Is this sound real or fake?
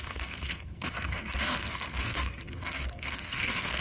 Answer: fake